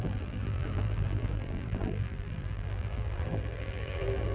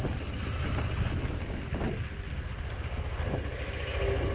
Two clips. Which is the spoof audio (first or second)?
first